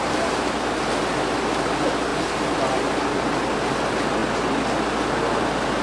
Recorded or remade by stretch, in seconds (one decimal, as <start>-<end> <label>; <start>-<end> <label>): 0.0-5.8 recorded